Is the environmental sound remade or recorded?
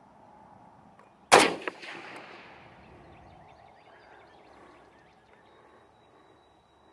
recorded